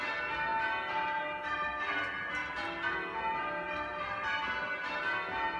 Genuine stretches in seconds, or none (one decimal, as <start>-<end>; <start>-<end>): 0.0-5.6

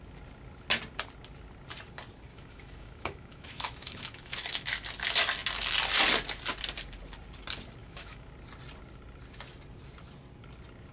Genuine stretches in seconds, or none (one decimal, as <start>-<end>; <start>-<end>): 0.0-2.3; 4.7-7.8; 8.3-10.9

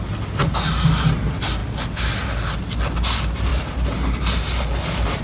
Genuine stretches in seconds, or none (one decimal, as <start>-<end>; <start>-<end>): 0.0-5.2

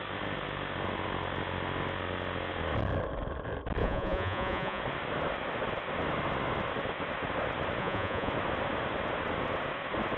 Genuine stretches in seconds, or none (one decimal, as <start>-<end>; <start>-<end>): 0.0-3.8; 4.8-7.8; 8.3-10.2

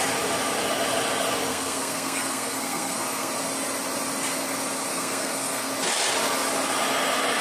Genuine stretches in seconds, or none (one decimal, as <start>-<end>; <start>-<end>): 0.0-1.5; 3.3-4.9; 5.7-7.4

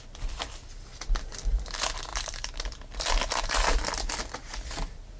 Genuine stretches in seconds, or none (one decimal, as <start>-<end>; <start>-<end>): 0.0-5.2